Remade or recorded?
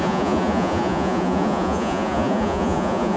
remade